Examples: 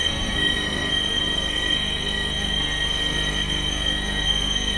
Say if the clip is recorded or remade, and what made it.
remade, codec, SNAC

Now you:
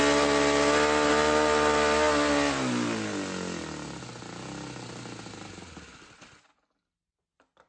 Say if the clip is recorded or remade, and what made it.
recorded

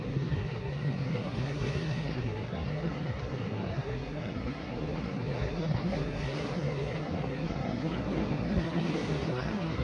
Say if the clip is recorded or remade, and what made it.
remade, codec, SNAC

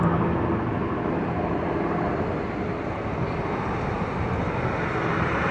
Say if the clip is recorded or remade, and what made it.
recorded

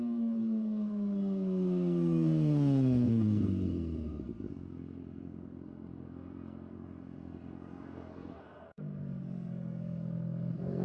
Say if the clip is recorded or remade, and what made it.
remade, codec, SNAC